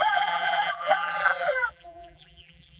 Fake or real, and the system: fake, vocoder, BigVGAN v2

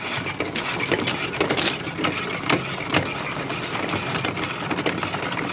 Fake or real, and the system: real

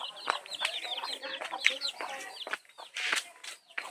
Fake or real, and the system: real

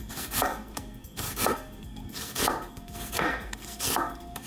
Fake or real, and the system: fake, codec, SNAC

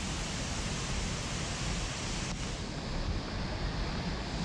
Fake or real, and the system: real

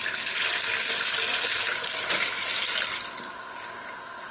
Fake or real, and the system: real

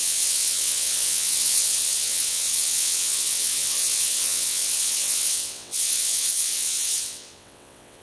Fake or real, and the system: fake, vocoder, WaveNeXt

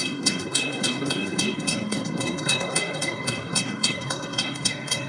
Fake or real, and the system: fake, codec, SNAC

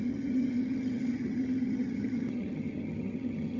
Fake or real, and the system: fake, vocoder, HiFi-GAN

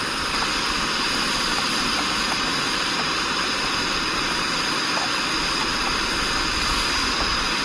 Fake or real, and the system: real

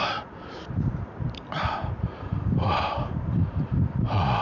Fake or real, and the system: fake, vocoder, BigVGAN v2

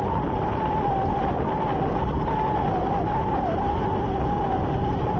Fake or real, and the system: real